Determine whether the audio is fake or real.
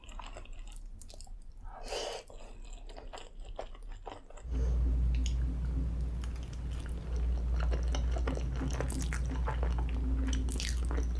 real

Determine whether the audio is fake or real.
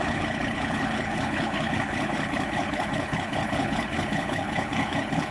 fake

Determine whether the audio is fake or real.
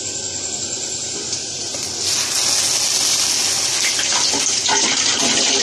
real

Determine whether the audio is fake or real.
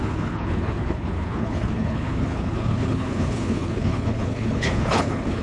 fake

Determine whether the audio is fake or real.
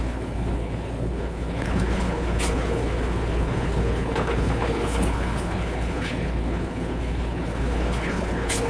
fake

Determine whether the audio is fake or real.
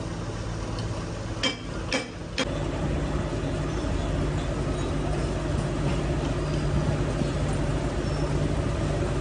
real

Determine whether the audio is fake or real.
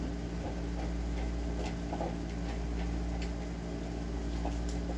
real